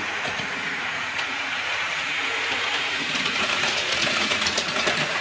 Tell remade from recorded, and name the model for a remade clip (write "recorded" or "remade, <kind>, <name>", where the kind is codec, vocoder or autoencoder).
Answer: remade, vocoder, Vocos